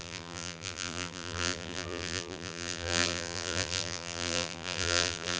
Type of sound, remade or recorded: remade